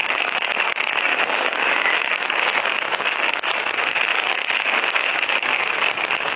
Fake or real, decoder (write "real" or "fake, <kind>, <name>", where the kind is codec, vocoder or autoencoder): fake, codec, DAC